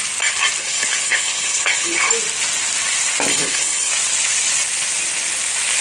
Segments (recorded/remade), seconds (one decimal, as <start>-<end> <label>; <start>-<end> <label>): 0.0-0.6 recorded; 0.6-2.1 remade; 2.1-3.3 recorded; 3.3-3.9 remade; 3.9-5.8 recorded